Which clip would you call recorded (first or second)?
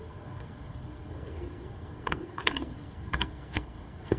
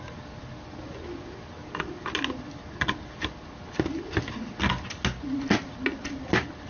second